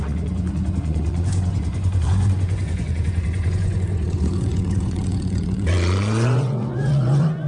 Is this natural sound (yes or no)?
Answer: no